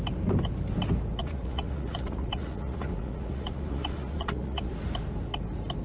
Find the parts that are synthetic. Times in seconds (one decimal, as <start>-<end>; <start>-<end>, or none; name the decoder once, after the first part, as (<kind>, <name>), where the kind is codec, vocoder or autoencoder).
1.2-4.7 (vocoder, Vocos)